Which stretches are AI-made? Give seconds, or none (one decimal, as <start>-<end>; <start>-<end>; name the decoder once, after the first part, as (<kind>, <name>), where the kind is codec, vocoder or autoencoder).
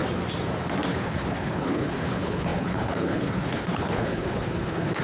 0.9-5.0 (codec, HILCodec)